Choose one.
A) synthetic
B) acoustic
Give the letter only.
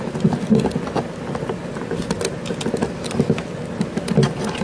B